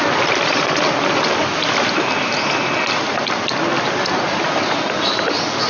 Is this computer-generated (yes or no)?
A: no